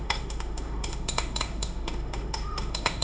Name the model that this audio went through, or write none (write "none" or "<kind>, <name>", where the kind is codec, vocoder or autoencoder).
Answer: autoencoder, DAC-VAE